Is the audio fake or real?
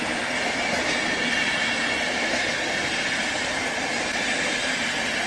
real